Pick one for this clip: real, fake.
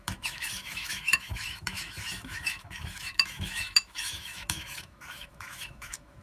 fake